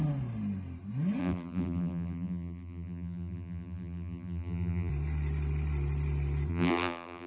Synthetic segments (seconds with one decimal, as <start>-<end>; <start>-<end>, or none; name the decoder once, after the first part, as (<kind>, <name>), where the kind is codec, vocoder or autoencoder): 1.2-4.9 (vocoder, BigVGAN v2); 6.5-7.3